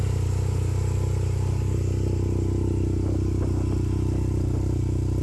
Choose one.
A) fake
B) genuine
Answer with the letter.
B